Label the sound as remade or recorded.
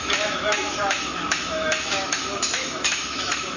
remade